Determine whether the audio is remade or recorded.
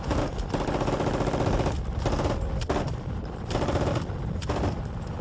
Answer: recorded